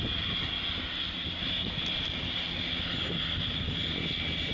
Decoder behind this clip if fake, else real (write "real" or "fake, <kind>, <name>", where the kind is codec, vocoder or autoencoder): real